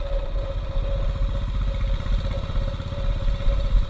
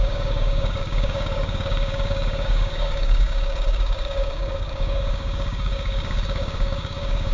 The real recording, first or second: first